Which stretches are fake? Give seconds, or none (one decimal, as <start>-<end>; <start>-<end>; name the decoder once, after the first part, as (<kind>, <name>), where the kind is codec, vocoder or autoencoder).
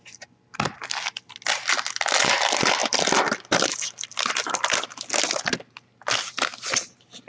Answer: none